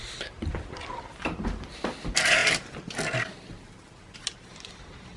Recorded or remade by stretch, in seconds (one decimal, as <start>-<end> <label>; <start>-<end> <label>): 0.0-5.2 recorded